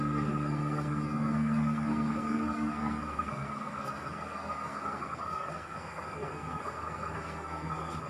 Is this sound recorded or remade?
remade